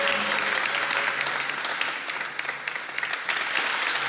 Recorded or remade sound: recorded